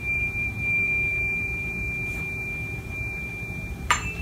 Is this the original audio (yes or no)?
no